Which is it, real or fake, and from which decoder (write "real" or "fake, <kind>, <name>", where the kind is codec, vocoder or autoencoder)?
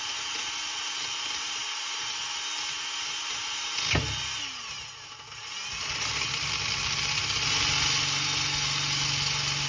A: real